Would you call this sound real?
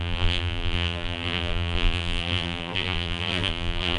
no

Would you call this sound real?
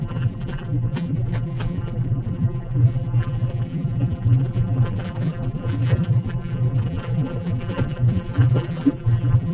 no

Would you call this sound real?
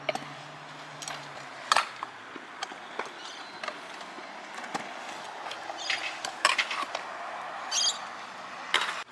yes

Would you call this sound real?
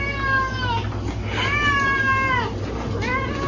yes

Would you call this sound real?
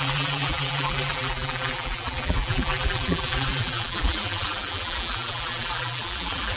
no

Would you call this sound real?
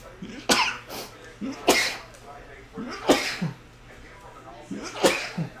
yes